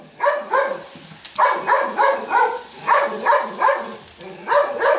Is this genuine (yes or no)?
yes